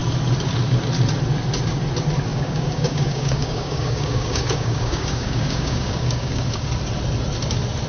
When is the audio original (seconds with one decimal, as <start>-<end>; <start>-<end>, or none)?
0.0-2.3; 6.7-7.9